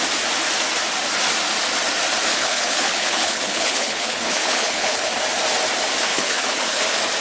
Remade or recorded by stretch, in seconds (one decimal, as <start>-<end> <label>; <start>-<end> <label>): 0.0-2.3 recorded; 2.3-5.1 remade; 5.1-6.1 recorded; 6.1-6.8 remade; 6.8-7.2 recorded